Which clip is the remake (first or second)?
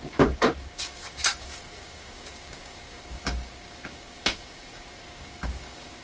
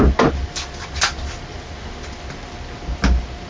first